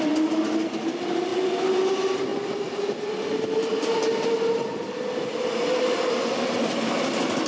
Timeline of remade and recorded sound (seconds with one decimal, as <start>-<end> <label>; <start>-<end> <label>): 0.0-7.5 recorded